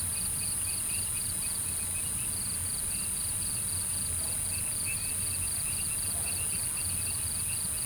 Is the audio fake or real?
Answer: real